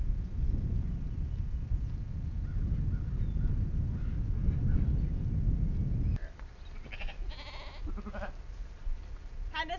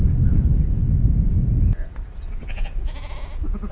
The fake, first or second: second